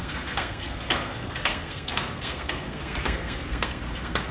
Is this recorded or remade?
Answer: remade